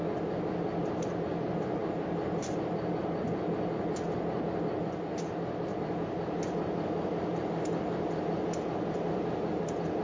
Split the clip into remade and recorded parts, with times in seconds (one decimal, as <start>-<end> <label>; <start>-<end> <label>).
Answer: 0.0-10.0 recorded